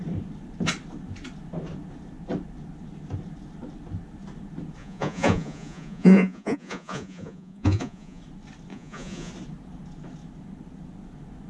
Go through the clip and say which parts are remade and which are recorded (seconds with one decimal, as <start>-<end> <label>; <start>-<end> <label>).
0.0-4.8 recorded; 4.8-8.2 remade; 8.2-8.7 recorded; 8.7-9.3 remade; 9.3-11.5 recorded